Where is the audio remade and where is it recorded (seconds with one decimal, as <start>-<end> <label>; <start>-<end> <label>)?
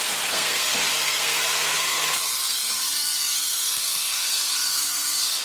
0.0-5.4 remade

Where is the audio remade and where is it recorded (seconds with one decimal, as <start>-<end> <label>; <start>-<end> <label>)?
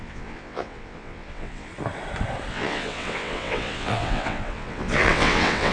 0.0-1.7 remade; 1.7-2.5 recorded; 2.5-5.7 remade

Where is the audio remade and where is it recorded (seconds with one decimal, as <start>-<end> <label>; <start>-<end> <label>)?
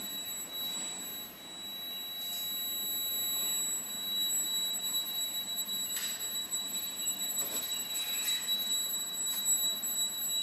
0.0-10.4 recorded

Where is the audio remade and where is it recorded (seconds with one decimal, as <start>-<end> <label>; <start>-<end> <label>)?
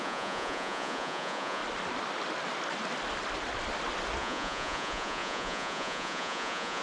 0.0-1.6 remade; 1.6-4.2 recorded; 4.2-6.8 remade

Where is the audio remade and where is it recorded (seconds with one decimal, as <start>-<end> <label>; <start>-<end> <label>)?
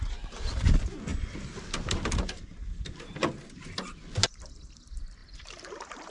0.0-5.2 recorded; 5.2-6.1 remade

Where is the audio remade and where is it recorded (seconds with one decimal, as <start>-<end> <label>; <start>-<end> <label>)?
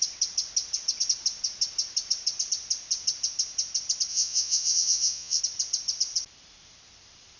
0.0-4.1 recorded; 4.1-5.4 remade; 5.4-7.4 recorded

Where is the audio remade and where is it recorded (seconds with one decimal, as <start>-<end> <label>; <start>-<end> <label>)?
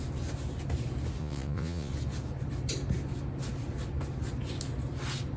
0.0-1.2 recorded; 1.2-1.9 remade; 1.9-5.4 recorded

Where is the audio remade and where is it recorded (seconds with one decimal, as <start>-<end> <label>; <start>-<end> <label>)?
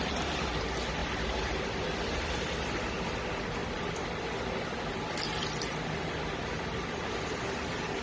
0.0-8.0 recorded